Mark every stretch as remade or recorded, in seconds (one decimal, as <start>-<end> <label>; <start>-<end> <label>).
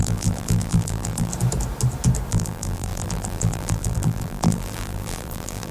0.0-1.3 remade; 1.3-2.3 recorded; 2.3-5.7 remade